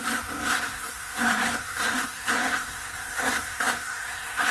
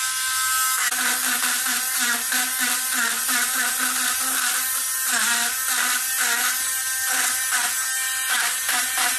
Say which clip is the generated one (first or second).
first